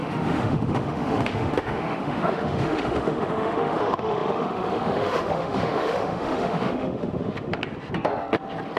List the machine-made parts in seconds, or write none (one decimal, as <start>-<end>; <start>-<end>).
0.0-7.6